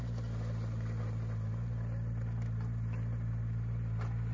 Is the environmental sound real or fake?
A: real